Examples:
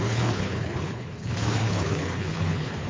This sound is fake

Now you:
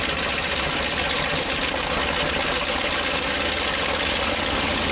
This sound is real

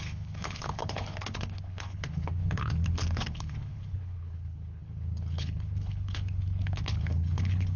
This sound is fake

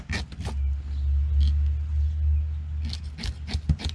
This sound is real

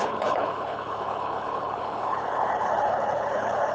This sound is fake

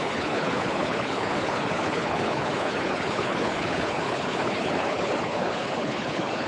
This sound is fake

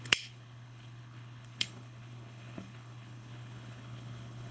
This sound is fake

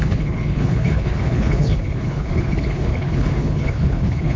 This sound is fake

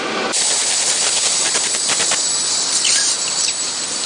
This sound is real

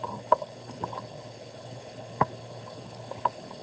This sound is fake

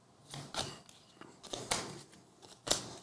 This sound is real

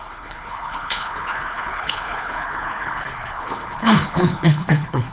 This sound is fake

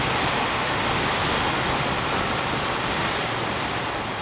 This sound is real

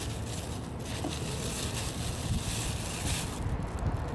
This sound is real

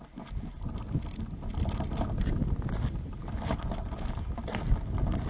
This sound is real